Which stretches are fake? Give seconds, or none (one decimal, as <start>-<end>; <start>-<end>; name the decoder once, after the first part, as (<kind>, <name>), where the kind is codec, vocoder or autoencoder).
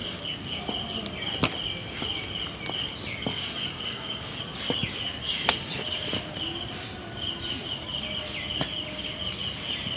0.0-0.6 (codec, DAC); 3.3-4.4; 5.2-5.7